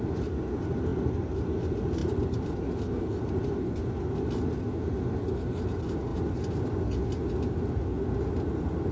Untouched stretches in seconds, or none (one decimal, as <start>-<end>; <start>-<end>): 0.0-8.9